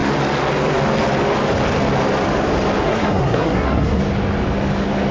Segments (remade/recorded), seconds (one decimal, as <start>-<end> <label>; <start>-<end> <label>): 0.0-2.8 recorded; 2.8-4.0 remade; 4.0-5.1 recorded